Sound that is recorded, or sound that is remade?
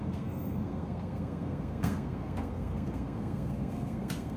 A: remade